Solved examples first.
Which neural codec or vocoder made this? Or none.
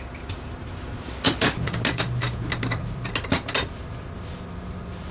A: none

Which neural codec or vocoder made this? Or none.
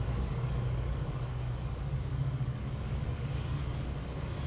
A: codec, DAC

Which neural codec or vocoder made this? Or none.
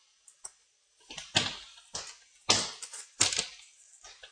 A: none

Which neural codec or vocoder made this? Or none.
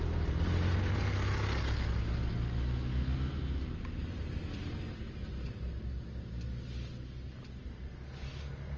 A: none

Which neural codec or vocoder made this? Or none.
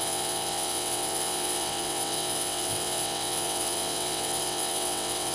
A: vocoder, WaveNeXt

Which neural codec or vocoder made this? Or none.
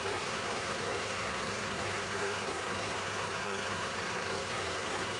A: codec, SNAC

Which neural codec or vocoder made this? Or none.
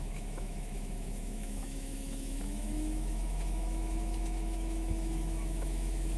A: autoencoder, DAC-VAE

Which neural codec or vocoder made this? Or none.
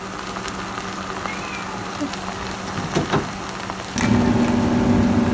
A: none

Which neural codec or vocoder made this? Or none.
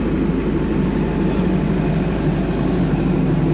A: none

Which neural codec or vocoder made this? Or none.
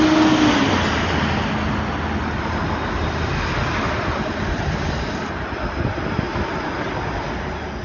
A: none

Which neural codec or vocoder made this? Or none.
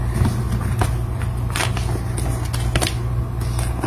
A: none